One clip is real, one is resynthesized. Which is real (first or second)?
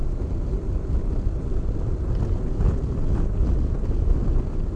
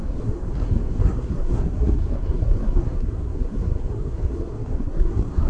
first